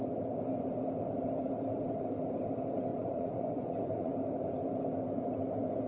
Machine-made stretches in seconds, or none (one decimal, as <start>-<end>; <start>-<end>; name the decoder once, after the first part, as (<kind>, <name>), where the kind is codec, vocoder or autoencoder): 2.9-4.1 (vocoder, Vocos)